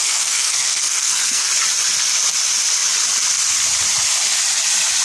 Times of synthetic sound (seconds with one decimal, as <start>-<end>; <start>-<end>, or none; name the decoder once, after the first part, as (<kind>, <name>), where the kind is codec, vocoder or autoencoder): 0.0-1.5 (codec, SNAC)